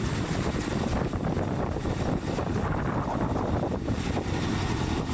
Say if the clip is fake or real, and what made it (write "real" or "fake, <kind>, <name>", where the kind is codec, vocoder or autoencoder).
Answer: real